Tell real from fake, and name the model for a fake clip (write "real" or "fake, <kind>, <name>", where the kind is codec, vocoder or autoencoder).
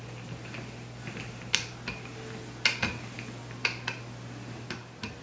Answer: real